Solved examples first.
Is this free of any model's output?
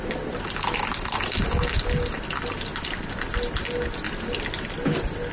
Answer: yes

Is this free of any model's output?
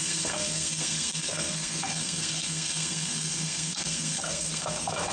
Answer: no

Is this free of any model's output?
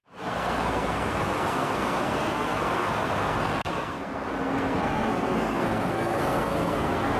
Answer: no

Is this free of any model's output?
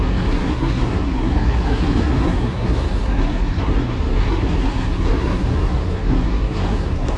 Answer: no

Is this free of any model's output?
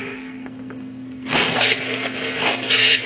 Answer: no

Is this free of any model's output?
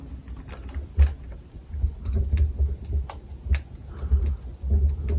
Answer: yes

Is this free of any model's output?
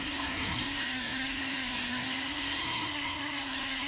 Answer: no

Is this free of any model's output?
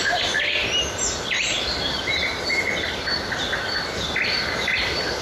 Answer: yes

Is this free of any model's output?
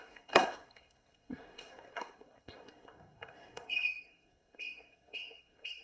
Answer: no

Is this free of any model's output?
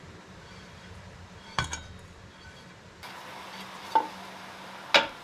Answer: yes